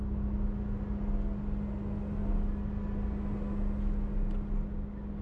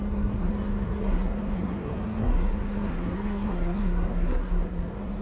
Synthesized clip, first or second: second